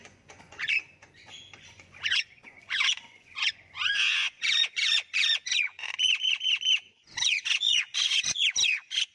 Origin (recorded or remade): remade